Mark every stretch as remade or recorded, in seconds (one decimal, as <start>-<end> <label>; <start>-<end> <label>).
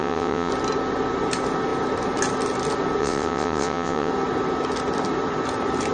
0.0-0.5 remade; 0.5-3.0 recorded; 3.0-4.1 remade; 4.1-5.9 recorded